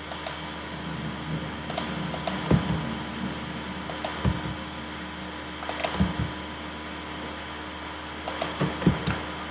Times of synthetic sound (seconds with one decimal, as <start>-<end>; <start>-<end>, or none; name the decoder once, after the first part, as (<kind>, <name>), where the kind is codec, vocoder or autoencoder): none